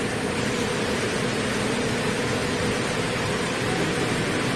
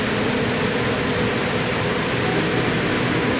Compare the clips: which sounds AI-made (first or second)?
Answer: first